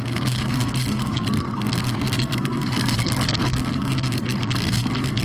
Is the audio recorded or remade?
remade